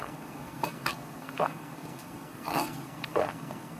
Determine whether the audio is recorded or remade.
remade